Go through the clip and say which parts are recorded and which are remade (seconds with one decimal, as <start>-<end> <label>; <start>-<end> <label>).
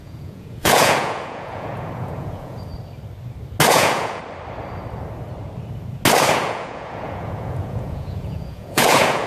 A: 0.0-2.7 remade; 2.7-3.7 recorded; 3.7-4.2 remade; 4.2-6.3 recorded; 6.3-9.3 remade